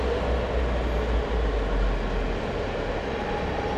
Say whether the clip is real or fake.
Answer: real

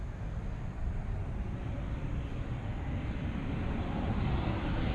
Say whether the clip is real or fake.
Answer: real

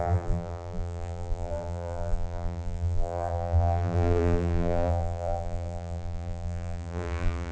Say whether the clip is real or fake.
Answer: fake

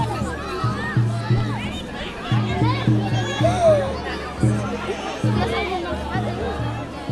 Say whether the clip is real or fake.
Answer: real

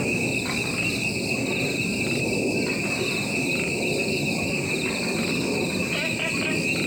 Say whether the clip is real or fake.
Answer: real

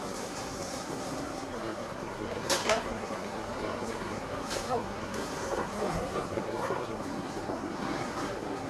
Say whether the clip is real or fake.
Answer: fake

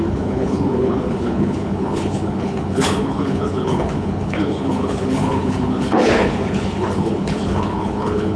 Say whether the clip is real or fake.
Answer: fake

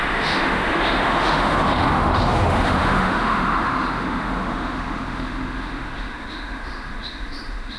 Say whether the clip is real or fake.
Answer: fake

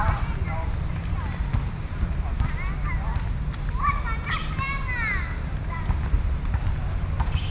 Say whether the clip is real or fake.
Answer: real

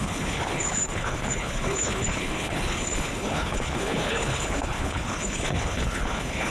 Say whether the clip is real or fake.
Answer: fake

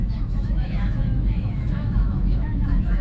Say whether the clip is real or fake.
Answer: fake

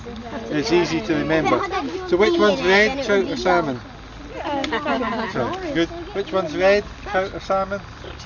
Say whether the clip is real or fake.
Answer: real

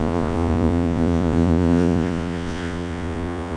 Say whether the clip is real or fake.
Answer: fake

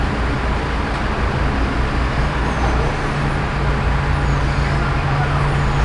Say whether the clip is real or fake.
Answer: real